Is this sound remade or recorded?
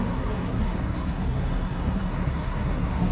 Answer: remade